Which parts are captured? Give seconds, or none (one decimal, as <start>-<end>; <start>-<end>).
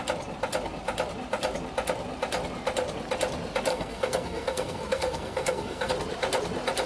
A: 0.0-3.7; 5.9-6.9